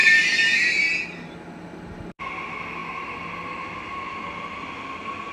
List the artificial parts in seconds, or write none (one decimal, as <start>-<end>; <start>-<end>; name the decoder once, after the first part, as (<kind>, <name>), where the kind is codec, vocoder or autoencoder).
0.0-2.1 (vocoder, BigVGAN v2)